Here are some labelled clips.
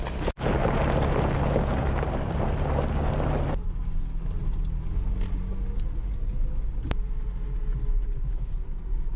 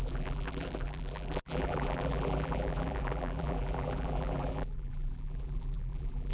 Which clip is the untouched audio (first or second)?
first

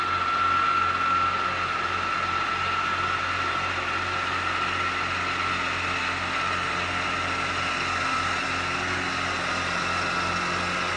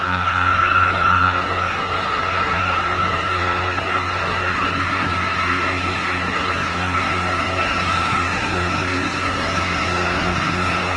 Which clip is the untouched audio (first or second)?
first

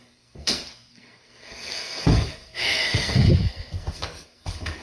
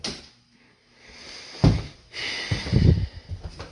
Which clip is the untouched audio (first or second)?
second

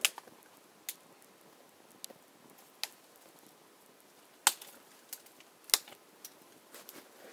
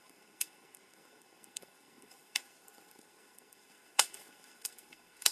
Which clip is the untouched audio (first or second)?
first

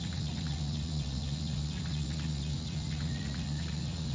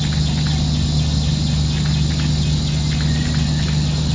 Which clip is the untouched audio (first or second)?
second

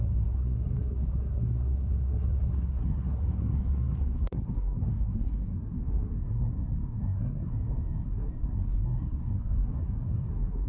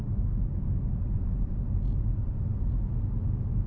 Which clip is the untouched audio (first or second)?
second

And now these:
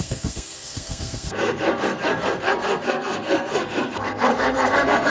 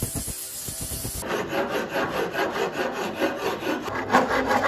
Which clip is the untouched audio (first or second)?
second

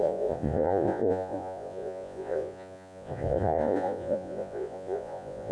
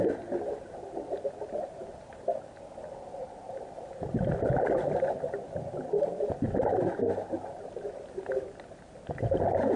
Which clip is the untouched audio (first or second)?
second